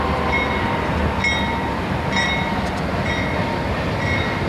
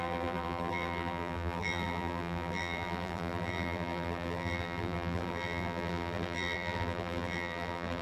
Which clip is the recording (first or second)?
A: first